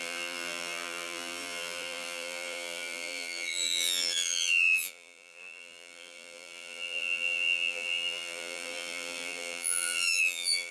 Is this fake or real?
fake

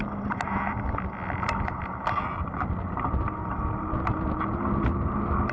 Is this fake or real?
real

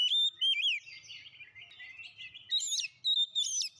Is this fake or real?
real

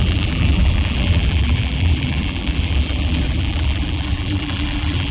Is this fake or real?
fake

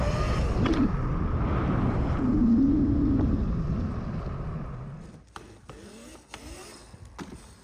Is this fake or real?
real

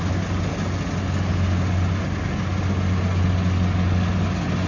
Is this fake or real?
real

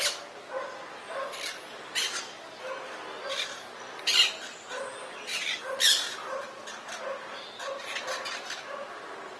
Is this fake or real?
real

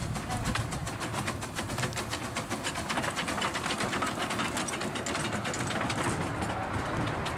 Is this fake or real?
real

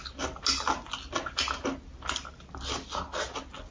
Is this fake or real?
real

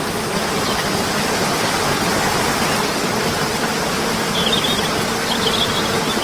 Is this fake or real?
real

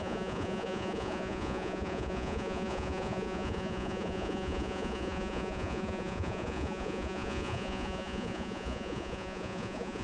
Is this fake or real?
fake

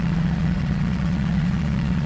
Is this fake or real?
fake